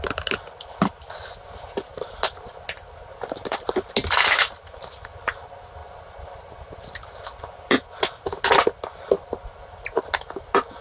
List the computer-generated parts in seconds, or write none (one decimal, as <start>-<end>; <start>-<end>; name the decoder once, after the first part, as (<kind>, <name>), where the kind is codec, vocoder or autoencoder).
3.1-3.7 (vocoder, BigVGAN v2)